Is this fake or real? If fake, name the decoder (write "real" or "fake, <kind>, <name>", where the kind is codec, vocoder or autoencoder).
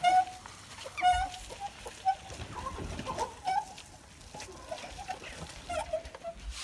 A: real